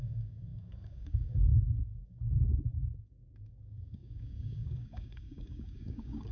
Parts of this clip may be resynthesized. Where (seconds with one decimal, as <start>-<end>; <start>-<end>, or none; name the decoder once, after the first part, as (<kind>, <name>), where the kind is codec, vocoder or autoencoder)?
0.0-6.3 (codec, DAC)